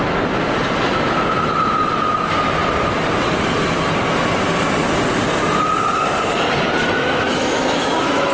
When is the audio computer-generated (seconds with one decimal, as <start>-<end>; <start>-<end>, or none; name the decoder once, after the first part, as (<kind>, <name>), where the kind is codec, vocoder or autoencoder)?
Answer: 6.8-8.3 (autoencoder, DAC-VAE)